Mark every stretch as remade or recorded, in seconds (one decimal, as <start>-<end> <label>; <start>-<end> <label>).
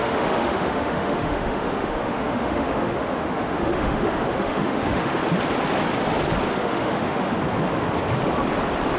0.0-5.2 remade; 5.2-6.5 recorded; 6.5-7.3 remade; 7.3-9.0 recorded